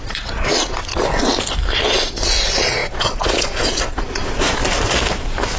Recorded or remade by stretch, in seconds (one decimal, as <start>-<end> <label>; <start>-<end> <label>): 0.0-0.9 remade; 0.9-1.8 recorded; 1.8-4.6 remade; 4.6-5.6 recorded